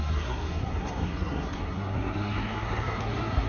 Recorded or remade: remade